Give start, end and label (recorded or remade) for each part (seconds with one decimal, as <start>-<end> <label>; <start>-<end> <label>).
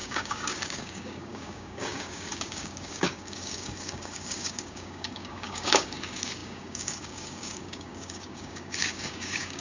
0.0-9.6 remade